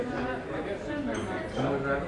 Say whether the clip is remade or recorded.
recorded